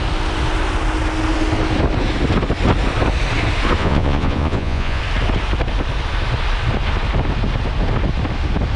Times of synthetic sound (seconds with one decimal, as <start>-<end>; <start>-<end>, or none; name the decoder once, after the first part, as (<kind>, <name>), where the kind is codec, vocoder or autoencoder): 3.8-5.0 (vocoder, Vocos)